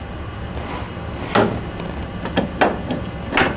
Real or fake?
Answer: real